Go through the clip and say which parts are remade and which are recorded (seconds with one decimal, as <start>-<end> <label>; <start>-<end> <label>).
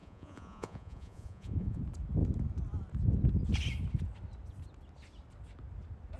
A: 0.0-1.8 remade; 1.8-6.2 recorded